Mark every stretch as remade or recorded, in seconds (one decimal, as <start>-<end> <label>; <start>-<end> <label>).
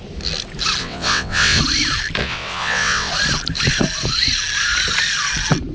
0.0-0.8 recorded; 0.8-1.6 remade; 1.6-2.2 recorded; 2.2-3.1 remade; 3.1-5.7 recorded